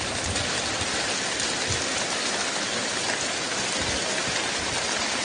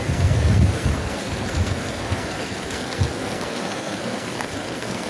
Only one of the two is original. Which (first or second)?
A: first